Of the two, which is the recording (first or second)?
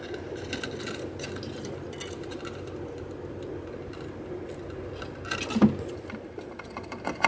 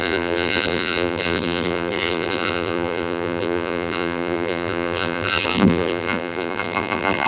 first